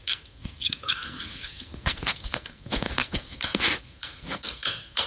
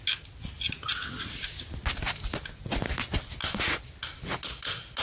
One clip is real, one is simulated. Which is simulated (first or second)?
first